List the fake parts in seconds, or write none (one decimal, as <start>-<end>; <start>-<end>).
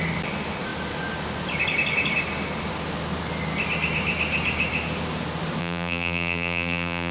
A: 5.6-7.1